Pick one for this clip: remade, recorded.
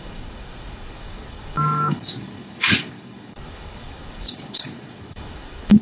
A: remade